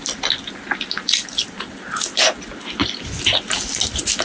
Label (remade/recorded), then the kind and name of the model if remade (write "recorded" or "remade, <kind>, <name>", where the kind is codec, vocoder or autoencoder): recorded